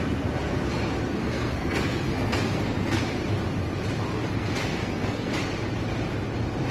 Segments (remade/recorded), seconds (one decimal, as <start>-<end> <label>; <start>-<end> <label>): 0.0-1.1 recorded; 1.1-3.0 remade; 3.0-4.2 recorded; 4.2-5.3 remade; 5.3-6.7 recorded